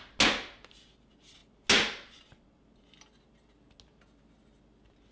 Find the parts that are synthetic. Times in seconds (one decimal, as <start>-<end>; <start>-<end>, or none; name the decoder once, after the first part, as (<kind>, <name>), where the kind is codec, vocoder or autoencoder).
none